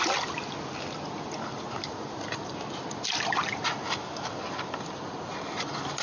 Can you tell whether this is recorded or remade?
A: recorded